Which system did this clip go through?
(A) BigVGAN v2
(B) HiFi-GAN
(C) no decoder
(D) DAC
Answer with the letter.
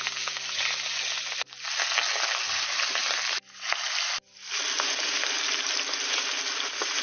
C